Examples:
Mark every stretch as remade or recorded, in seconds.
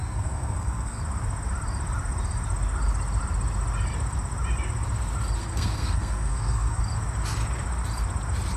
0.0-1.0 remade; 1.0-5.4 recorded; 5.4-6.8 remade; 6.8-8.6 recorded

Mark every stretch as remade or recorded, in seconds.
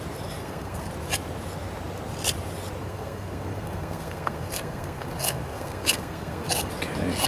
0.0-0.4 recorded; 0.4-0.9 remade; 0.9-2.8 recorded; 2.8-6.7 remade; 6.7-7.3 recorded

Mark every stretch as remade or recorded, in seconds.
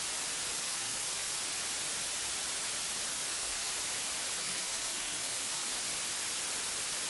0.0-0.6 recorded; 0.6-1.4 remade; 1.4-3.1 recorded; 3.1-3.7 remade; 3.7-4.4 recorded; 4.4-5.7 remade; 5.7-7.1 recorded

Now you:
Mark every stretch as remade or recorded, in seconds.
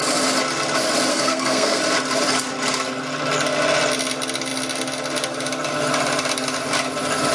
0.0-1.1 recorded; 1.1-1.8 remade; 1.8-7.3 recorded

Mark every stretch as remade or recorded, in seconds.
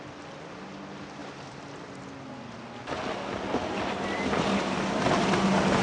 0.0-5.8 recorded